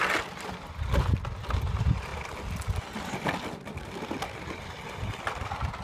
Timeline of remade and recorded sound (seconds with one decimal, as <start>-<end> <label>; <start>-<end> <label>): 0.0-5.8 recorded